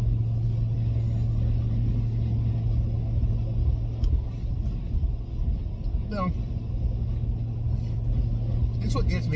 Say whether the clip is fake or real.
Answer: real